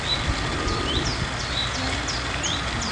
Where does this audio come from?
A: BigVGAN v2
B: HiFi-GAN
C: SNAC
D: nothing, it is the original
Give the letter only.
D